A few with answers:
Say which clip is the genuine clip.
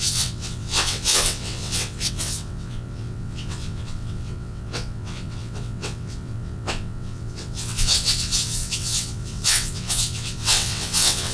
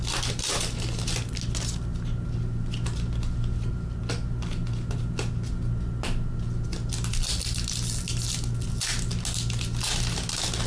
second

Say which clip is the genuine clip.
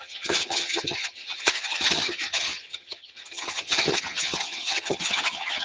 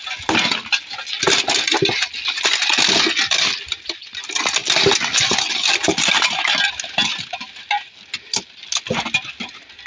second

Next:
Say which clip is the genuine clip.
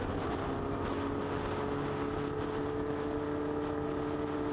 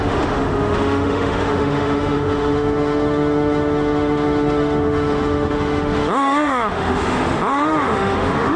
first